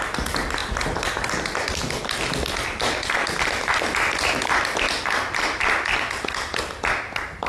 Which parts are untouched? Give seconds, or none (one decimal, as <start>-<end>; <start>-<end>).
none